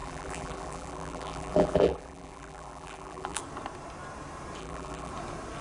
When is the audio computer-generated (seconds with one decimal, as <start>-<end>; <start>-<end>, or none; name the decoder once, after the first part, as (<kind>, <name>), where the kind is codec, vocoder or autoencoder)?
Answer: 0.0-3.4 (vocoder, BigVGAN v2); 4.6-5.1